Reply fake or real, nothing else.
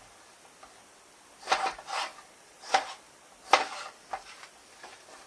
real